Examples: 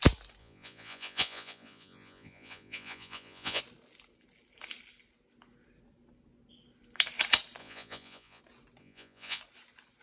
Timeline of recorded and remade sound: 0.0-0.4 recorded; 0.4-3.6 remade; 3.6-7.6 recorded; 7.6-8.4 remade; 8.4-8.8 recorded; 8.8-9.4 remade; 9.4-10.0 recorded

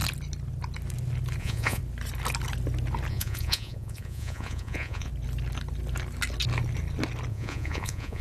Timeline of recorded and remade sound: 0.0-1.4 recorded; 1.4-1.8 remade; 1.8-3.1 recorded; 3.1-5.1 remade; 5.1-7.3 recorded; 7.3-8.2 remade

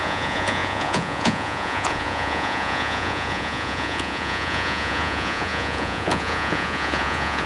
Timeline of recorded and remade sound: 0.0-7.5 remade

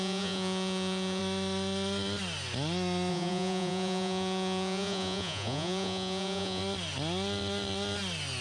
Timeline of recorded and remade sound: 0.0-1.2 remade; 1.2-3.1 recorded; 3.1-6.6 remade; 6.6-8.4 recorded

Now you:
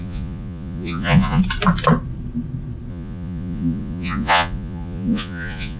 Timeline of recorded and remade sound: 0.0-1.4 remade; 1.4-2.9 recorded; 2.9-5.8 remade

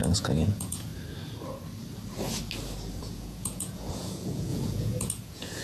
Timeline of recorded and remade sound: 0.0-0.9 remade; 0.9-3.0 recorded; 3.0-5.6 remade

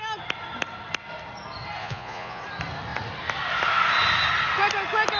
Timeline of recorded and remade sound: 0.0-1.8 recorded; 1.8-2.4 remade; 2.4-5.2 recorded